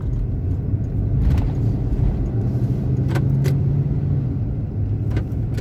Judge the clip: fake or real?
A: real